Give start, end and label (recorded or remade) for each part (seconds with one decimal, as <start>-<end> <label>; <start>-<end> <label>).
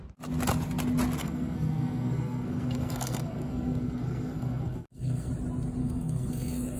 0.0-1.2 recorded; 1.2-5.3 remade; 5.3-5.8 recorded; 5.8-6.8 remade